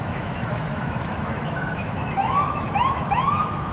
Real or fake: fake